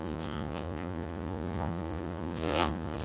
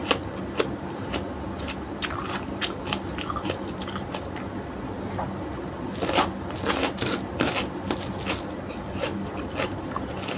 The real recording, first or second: second